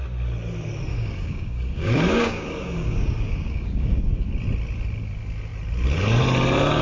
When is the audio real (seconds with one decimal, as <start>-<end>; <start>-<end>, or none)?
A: 0.0-0.9; 4.1-6.8